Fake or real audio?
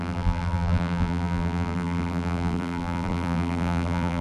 fake